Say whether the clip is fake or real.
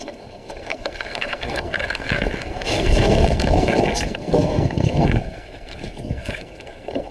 fake